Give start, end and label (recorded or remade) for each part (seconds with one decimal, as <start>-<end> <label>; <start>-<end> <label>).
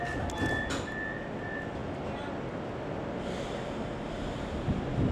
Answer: 0.0-5.1 recorded